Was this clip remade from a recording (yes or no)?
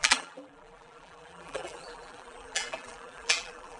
yes